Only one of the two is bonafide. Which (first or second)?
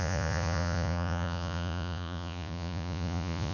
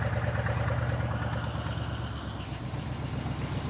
second